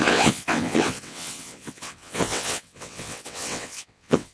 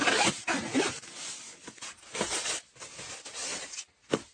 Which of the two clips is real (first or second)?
second